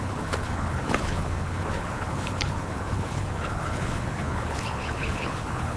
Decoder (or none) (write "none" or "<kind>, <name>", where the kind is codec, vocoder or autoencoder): codec, HILCodec